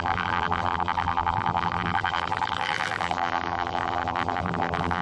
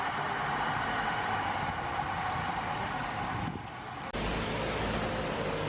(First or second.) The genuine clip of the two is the second